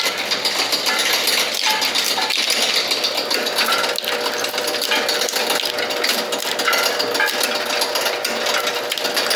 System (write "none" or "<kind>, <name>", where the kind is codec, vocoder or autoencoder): none